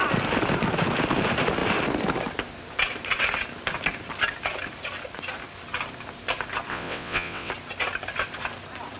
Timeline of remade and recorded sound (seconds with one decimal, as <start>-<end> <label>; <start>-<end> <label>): 0.0-6.7 recorded; 6.7-7.5 remade; 7.5-9.0 recorded